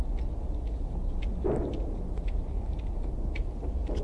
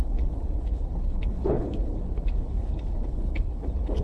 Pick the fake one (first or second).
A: second